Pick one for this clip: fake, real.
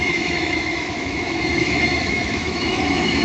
fake